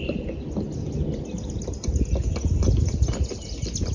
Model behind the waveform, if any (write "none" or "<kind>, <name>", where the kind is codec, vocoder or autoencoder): none